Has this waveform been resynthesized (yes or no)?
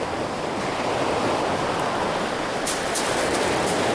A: no